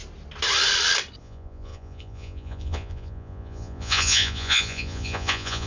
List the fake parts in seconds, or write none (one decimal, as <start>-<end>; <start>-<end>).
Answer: 1.2-5.7